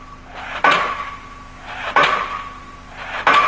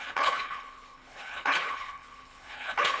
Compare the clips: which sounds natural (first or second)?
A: first